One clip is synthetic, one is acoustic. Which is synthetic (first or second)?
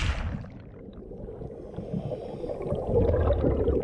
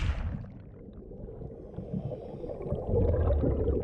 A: first